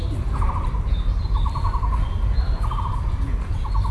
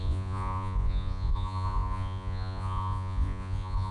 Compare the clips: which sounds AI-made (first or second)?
second